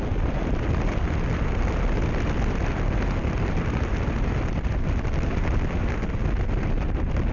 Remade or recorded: recorded